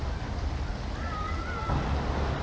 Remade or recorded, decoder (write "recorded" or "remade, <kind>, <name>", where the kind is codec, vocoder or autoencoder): recorded